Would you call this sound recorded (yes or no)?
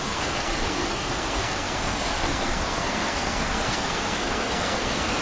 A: no